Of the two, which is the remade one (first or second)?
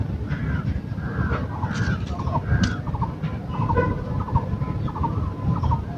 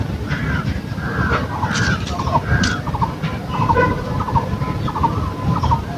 second